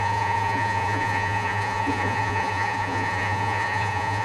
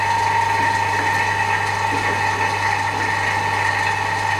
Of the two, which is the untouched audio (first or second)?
second